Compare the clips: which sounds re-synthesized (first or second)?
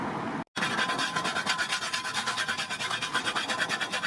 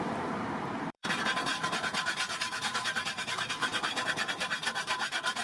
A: second